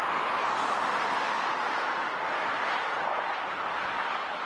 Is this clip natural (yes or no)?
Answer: yes